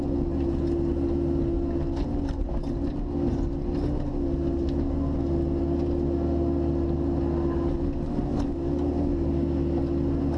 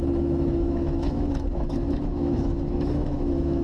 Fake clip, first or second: second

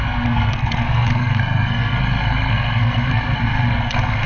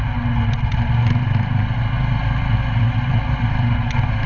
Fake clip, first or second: first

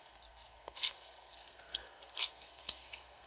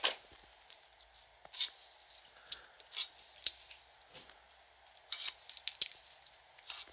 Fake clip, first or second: first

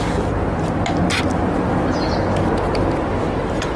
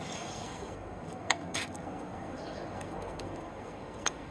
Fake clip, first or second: second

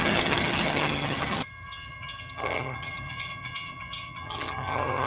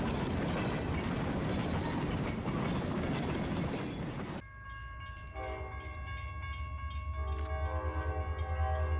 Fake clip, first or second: first